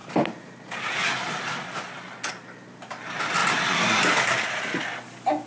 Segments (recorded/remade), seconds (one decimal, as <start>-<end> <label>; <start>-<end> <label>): 0.0-5.5 recorded